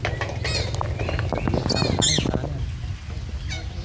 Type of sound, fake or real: real